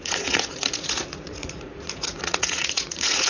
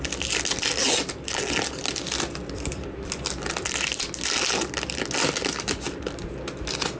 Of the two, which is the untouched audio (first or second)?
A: second